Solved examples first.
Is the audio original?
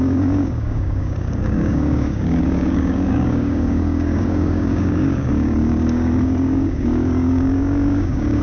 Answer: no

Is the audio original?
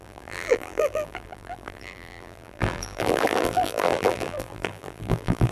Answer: no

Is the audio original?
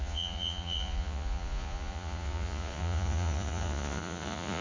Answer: no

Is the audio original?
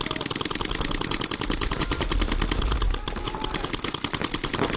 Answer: yes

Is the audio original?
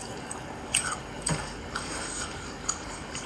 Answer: no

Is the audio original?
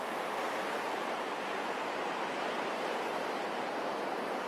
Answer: no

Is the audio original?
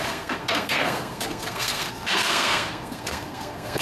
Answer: no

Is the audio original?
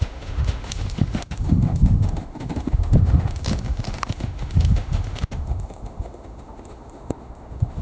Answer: no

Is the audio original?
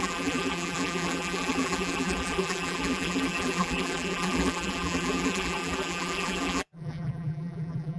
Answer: no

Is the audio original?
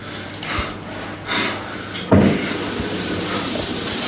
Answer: yes